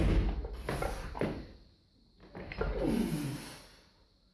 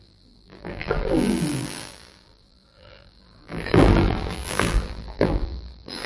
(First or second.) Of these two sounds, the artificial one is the second